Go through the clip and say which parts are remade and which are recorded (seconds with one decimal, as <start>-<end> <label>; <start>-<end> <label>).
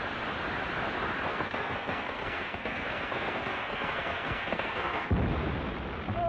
0.0-1.3 recorded; 1.3-5.1 remade; 5.1-6.3 recorded